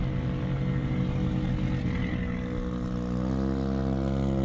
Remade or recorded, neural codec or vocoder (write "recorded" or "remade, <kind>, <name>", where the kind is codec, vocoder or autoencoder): recorded